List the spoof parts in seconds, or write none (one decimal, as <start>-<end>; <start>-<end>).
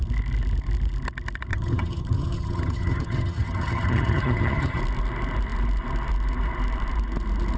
1.5-4.8